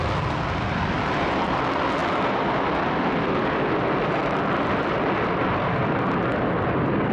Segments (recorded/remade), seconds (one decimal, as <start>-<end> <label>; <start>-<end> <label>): 0.0-4.2 recorded; 4.2-6.0 remade; 6.0-7.1 recorded